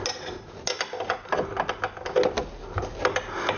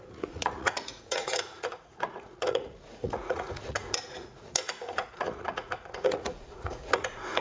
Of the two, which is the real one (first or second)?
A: first